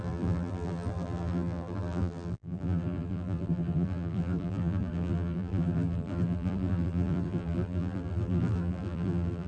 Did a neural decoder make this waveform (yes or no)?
yes